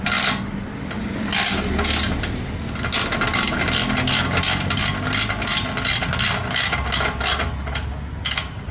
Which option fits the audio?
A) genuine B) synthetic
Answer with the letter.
A